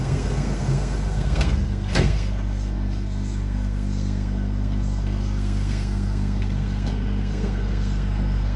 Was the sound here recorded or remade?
remade